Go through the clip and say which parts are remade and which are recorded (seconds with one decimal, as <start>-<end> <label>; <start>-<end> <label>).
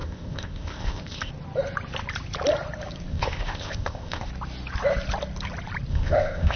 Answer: 0.0-1.3 remade; 1.3-3.1 recorded; 3.1-4.3 remade; 4.3-5.9 recorded; 5.9-6.6 remade